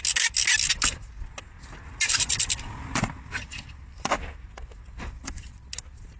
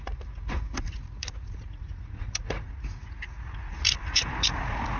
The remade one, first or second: second